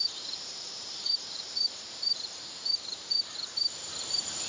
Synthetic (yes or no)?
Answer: yes